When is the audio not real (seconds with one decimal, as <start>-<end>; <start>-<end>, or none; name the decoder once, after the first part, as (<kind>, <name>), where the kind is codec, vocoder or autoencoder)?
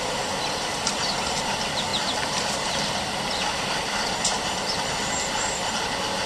none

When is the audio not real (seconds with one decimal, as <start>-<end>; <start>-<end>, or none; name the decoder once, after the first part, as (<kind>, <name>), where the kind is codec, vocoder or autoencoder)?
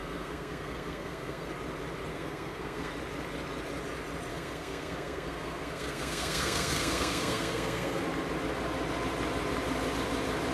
0.0-1.5 (codec, SNAC); 2.1-2.9; 4.3-8.0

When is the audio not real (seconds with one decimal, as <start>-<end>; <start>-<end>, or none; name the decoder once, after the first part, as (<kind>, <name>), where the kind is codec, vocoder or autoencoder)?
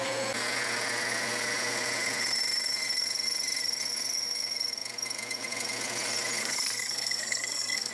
6.4-7.9 (codec, SNAC)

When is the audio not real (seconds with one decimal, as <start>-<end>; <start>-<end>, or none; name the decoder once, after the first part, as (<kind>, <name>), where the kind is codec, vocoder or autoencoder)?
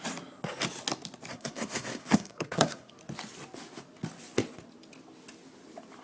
1.3-2.9 (codec, SNAC)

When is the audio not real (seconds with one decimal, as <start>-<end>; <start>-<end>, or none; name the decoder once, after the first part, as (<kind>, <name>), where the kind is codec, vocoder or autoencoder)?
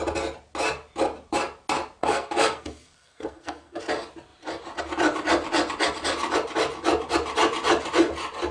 2.0-3.8 (codec, SNAC)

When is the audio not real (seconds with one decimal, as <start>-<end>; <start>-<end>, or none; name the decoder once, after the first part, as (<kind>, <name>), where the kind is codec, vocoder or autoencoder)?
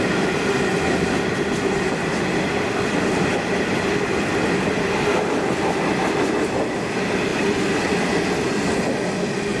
none